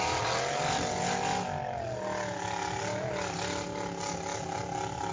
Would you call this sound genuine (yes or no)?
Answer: yes